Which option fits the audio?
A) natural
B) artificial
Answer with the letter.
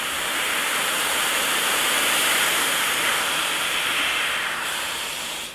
B